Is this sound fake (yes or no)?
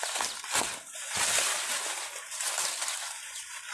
no